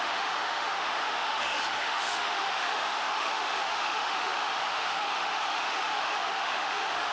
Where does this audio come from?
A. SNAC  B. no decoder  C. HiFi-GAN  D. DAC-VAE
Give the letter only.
D